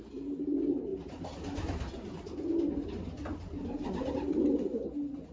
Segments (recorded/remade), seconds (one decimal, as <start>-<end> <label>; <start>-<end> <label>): 0.0-5.3 recorded